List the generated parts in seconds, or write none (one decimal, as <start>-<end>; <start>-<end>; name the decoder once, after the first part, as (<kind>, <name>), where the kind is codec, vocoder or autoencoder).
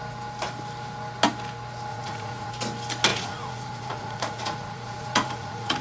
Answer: 1.9-2.5 (vocoder, Vocos); 3.1-5.8